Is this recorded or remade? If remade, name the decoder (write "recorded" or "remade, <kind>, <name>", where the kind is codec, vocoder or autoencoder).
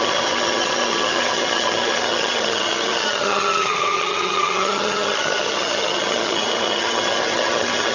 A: remade, vocoder, HiFi-GAN